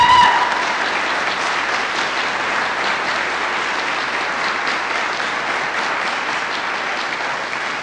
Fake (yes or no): no